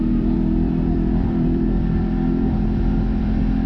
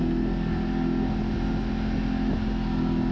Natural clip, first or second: second